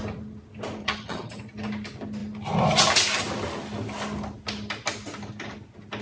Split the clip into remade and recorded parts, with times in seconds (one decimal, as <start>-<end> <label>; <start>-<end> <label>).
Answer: 0.0-0.8 recorded; 0.8-1.4 remade; 1.4-6.0 recorded